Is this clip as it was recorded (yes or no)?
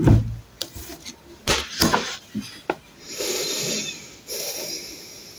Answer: yes